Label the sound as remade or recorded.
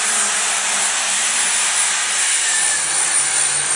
recorded